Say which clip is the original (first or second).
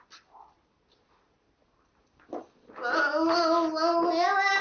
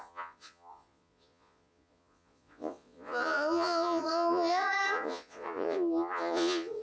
first